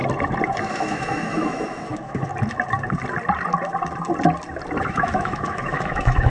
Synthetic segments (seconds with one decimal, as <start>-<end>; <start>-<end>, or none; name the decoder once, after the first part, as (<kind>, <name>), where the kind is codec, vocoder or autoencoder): 0.7-2.3 (autoencoder, DAC-VAE); 4.8-6.3